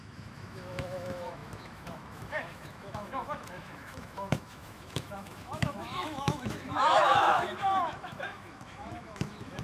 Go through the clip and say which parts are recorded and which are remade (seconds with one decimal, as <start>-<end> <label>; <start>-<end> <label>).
0.0-9.6 remade